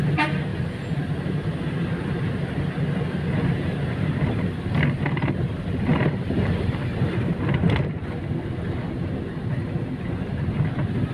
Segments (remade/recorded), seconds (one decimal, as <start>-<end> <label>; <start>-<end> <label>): 0.0-5.9 recorded; 5.9-7.4 remade; 7.4-11.1 recorded